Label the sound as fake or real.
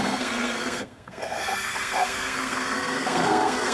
fake